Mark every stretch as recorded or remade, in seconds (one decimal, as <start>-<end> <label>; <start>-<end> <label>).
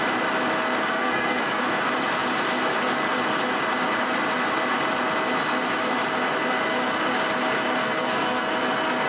0.0-0.9 recorded; 0.9-1.6 remade; 1.6-7.8 recorded; 7.8-8.5 remade; 8.5-9.1 recorded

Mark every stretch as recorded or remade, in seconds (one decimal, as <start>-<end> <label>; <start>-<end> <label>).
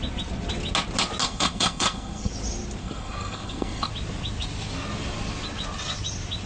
0.0-1.2 recorded; 1.2-2.3 remade; 2.3-2.8 recorded; 2.8-3.9 remade; 3.9-6.5 recorded